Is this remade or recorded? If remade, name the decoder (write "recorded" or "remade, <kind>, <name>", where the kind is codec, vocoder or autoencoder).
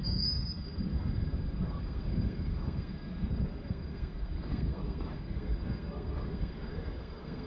remade, codec, SNAC